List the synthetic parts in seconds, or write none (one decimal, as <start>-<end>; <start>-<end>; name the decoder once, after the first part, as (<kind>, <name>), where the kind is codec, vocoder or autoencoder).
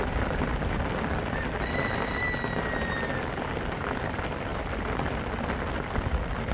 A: none